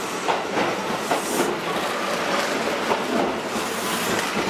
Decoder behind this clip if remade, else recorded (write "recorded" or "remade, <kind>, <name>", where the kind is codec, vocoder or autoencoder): recorded